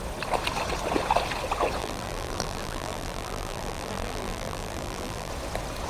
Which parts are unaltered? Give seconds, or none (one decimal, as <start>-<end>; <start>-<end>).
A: 0.0-1.8; 5.3-5.9